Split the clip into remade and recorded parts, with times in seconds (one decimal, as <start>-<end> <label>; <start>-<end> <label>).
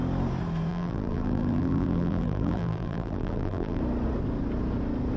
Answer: 0.0-0.7 recorded; 0.7-3.8 remade; 3.8-5.2 recorded